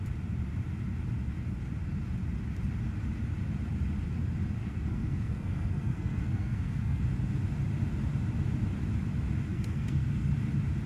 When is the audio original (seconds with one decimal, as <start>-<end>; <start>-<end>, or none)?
0.0-4.6; 7.0-9.5; 10.3-10.9